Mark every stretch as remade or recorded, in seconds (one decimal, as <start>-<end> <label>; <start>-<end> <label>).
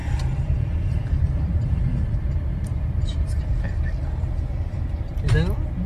0.0-3.5 remade; 3.5-5.9 recorded